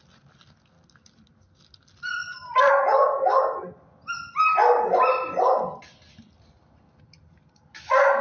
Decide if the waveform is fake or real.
real